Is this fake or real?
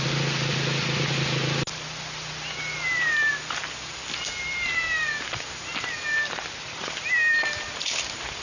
real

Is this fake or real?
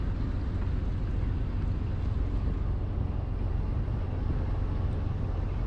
real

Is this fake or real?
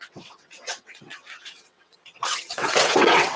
fake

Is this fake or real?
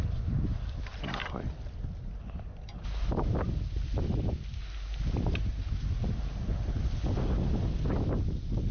real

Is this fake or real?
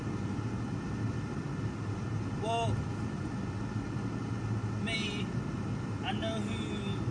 real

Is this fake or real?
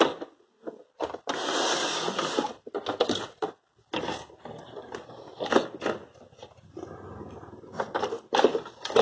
real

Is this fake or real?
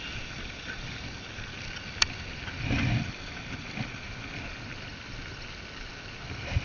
real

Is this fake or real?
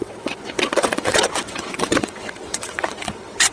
fake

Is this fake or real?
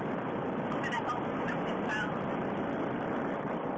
real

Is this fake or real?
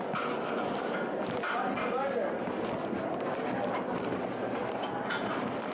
real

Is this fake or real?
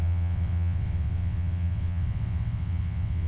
fake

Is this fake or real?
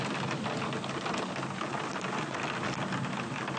real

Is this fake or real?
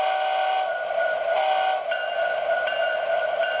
real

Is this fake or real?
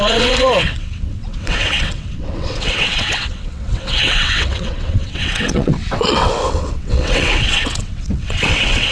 fake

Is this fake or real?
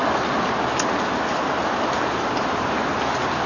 real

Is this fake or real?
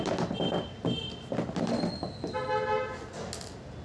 real